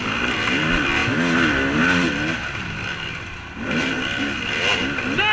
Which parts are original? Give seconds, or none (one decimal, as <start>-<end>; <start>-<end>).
0.0-5.3